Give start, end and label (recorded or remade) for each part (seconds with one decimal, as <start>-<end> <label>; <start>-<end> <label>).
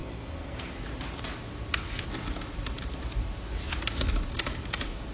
0.0-0.7 remade; 0.7-5.1 recorded